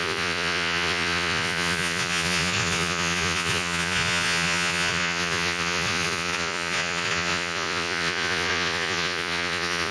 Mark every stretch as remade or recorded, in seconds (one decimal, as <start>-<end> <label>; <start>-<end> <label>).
0.0-9.9 remade